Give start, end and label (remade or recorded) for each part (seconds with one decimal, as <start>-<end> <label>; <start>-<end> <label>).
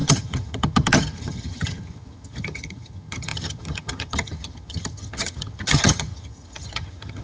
0.0-7.2 remade